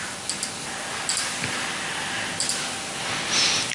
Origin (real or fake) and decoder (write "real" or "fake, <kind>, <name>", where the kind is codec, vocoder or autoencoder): real